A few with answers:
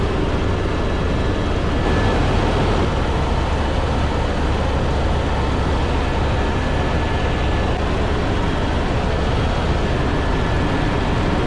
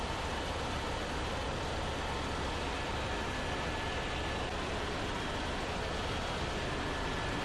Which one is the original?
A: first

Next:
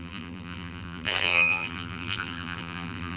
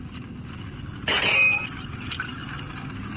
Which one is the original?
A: second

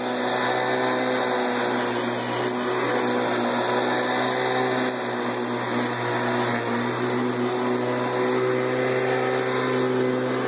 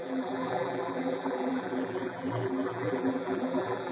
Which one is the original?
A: first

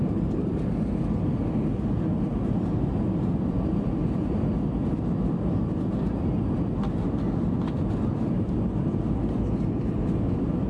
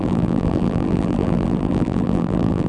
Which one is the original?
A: first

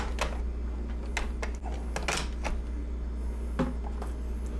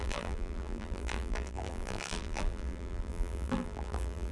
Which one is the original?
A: first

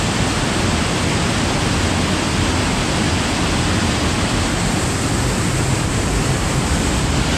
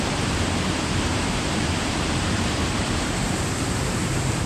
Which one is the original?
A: first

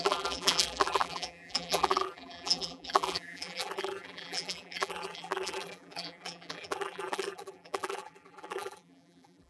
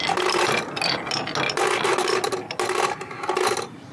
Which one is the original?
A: second